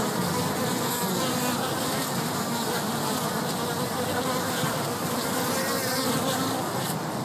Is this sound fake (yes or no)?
no